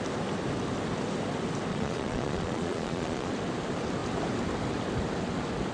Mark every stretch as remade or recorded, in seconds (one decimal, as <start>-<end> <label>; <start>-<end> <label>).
0.0-1.7 recorded; 1.7-3.3 remade; 3.3-5.7 recorded